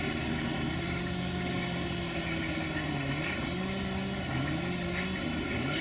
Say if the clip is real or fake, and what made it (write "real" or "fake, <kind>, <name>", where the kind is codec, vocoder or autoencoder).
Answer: real